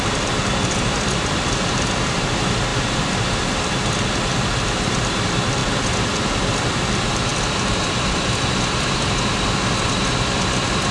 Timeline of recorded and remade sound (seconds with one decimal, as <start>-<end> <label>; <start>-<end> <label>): 0.0-2.7 remade; 2.7-4.6 recorded; 4.6-5.6 remade; 5.6-6.7 recorded; 6.7-10.9 remade